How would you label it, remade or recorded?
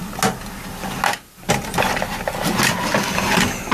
recorded